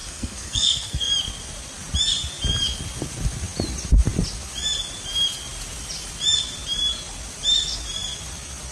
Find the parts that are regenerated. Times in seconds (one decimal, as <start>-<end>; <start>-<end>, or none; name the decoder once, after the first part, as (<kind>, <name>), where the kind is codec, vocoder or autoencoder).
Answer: 0.0-1.1 (codec, SNAC)